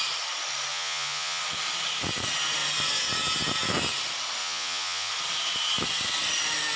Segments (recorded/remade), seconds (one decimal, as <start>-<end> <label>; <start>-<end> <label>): 0.0-0.7 recorded; 0.7-1.4 remade; 1.4-4.4 recorded; 4.4-5.1 remade; 5.1-6.8 recorded